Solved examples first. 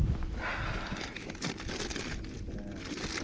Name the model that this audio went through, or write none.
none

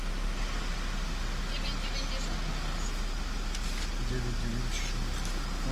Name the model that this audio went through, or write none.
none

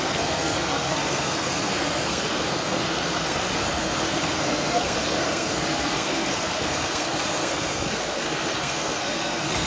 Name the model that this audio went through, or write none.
codec, SNAC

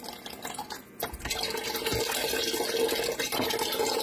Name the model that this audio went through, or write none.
none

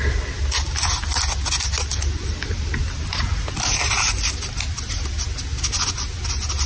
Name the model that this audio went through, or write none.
none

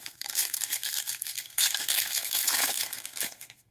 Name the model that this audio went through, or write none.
codec, SNAC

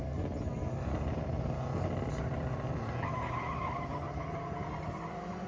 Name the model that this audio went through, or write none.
none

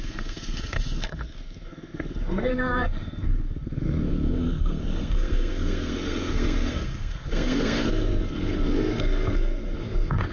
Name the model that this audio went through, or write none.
codec, SNAC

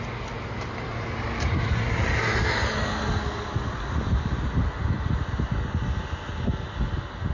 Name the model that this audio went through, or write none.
none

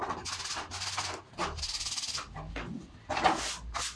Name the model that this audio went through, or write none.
none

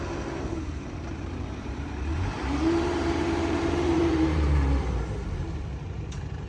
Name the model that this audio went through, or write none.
vocoder, BigVGAN v2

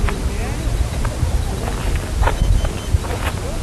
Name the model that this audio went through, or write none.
none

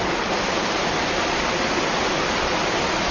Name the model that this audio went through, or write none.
none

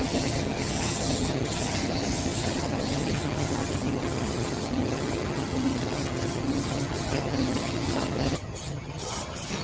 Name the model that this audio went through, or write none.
vocoder, HiFi-GAN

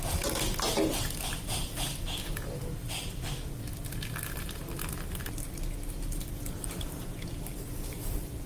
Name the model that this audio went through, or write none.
none